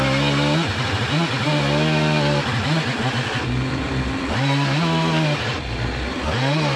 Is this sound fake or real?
real